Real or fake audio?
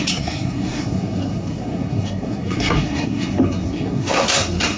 fake